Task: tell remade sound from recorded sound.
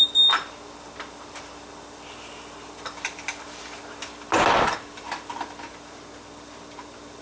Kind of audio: recorded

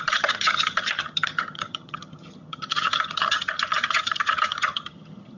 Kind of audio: remade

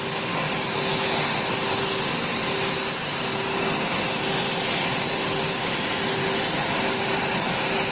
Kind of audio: recorded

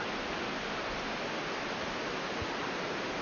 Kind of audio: recorded